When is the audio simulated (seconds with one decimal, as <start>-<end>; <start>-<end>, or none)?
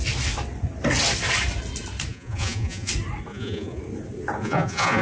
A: 2.1-2.9; 3.3-3.8; 4.4-5.0